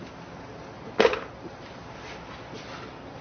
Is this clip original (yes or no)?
yes